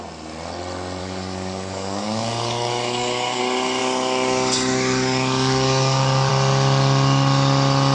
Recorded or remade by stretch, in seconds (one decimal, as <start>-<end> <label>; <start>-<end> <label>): 0.0-1.0 recorded; 1.0-3.4 remade; 3.4-3.8 recorded; 3.8-6.3 remade; 6.3-7.9 recorded

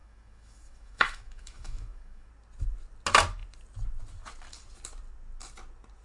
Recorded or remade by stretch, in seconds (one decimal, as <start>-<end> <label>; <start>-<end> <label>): 0.0-2.3 remade; 2.3-6.0 recorded